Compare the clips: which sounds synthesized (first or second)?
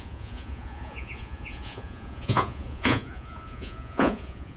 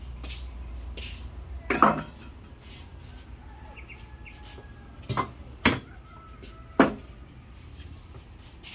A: first